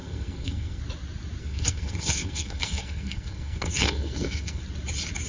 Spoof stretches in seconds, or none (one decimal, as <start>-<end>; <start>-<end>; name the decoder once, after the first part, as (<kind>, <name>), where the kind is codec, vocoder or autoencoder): 0.0-0.8 (codec, SNAC); 1.4-4.6

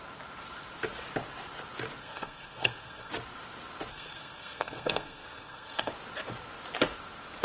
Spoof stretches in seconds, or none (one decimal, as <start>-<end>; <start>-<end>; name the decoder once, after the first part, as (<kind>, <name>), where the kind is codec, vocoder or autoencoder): 2.0-3.1 (codec, SNAC); 3.9-5.9

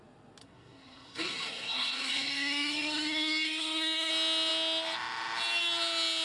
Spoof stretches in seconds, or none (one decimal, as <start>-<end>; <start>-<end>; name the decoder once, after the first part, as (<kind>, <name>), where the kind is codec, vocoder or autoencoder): 0.4-4.1 (codec, SNAC)

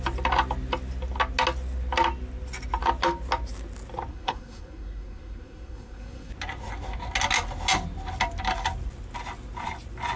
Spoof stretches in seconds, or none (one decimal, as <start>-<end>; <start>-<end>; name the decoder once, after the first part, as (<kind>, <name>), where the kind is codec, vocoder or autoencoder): 4.1-6.3 (codec, SNAC)